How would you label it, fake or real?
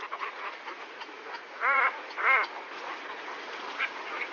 fake